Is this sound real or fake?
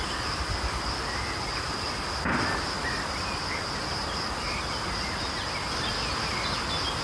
real